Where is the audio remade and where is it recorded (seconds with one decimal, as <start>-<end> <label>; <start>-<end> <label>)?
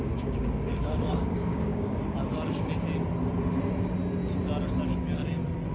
0.0-2.0 remade; 2.0-5.7 recorded